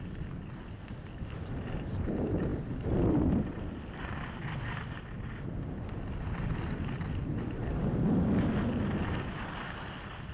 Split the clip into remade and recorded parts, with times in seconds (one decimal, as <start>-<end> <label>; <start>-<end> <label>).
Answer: 0.0-10.3 recorded